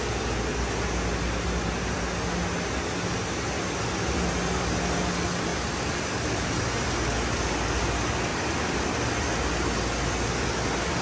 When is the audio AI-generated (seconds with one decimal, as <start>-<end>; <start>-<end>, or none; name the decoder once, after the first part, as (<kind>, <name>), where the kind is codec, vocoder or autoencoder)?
5.5-6.6 (vocoder, BigVGAN v2); 8.3-9.1